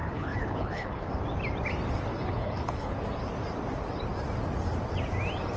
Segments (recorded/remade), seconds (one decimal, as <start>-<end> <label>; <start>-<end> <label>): 0.0-1.0 remade; 1.0-2.1 recorded; 2.1-3.0 remade; 3.0-5.6 recorded

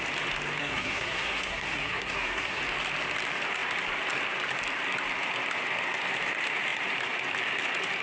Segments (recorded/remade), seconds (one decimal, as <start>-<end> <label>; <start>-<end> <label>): 0.0-0.6 recorded; 0.6-2.6 remade; 2.6-8.0 recorded

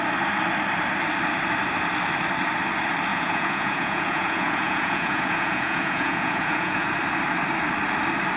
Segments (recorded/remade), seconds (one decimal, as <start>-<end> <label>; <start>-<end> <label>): 0.0-3.1 recorded; 3.1-6.9 remade; 6.9-8.4 recorded

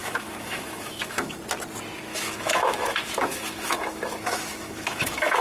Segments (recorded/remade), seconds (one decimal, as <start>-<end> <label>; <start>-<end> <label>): 0.0-1.4 remade; 1.4-2.1 recorded; 2.1-5.4 remade

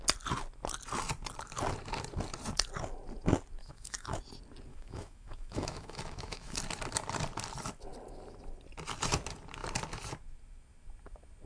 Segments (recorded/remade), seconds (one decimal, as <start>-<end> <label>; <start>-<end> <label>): 0.0-3.6 recorded; 3.6-4.2 remade; 4.2-4.7 recorded; 4.7-6.6 remade; 6.6-11.5 recorded

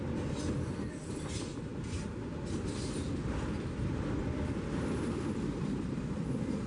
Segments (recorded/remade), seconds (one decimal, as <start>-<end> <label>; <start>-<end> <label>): 0.0-6.7 recorded